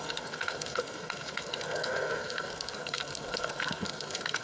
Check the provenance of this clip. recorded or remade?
remade